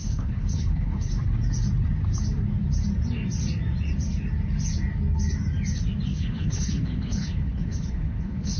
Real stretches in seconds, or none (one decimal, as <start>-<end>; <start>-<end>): 1.1-6.1